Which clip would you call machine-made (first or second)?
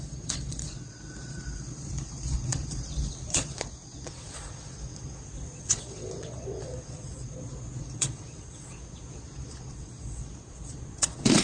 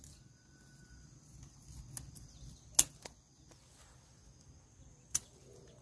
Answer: first